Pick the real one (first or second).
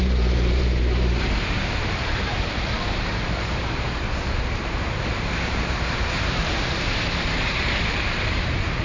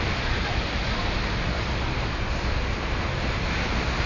second